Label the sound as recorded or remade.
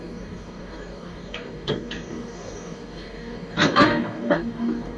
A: remade